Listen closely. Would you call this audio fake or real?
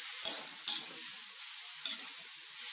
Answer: real